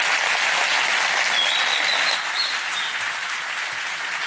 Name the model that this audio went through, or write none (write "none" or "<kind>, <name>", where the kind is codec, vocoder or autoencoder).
none